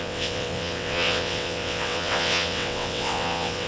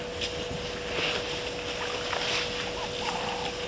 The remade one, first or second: first